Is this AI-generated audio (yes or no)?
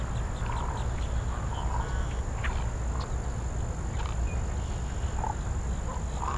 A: no